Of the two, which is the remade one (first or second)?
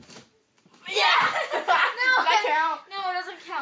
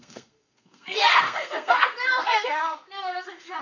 second